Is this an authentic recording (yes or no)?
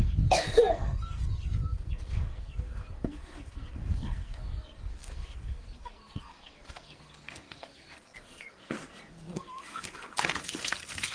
no